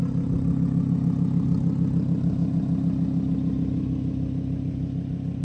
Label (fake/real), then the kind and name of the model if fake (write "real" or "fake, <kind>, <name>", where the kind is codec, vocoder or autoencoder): real